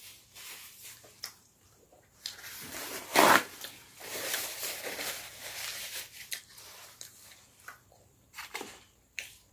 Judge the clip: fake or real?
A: fake